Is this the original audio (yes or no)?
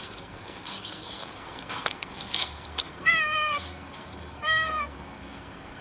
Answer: no